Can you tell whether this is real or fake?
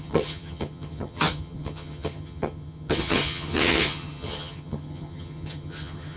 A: fake